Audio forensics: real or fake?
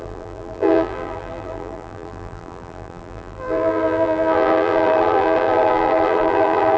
fake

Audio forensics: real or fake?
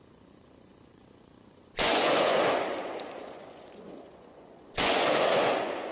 fake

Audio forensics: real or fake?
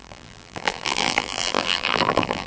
fake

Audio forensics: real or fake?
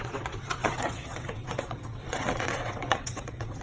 fake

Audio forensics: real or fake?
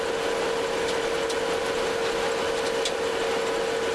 real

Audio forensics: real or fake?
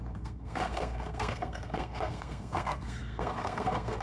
fake